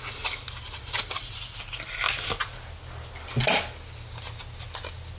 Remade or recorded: recorded